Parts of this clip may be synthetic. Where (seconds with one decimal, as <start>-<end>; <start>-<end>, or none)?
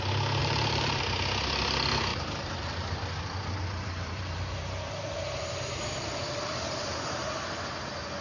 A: 0.4-1.0; 2.1-7.0